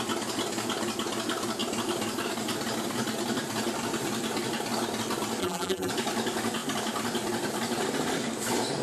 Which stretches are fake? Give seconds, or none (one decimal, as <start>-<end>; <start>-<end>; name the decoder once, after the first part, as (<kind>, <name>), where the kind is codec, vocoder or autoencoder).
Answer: 5.4-5.9 (vocoder, BigVGAN v2)